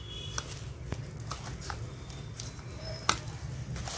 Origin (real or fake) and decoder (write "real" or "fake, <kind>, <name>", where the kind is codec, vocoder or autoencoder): real